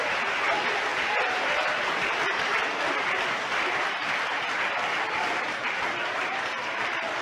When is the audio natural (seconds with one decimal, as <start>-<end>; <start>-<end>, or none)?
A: 0.0-0.9; 2.2-6.0; 6.8-7.2